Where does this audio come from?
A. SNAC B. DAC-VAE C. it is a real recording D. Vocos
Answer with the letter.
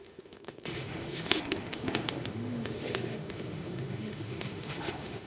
B